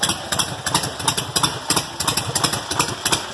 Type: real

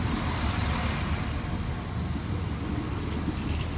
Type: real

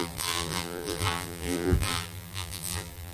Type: fake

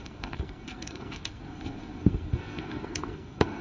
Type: fake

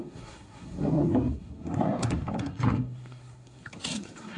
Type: fake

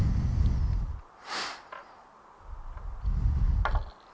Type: real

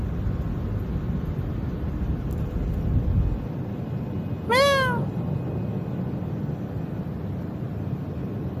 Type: real